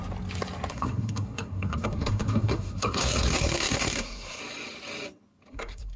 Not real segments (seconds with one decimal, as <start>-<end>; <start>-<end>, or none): 0.7-4.4; 5.5-6.0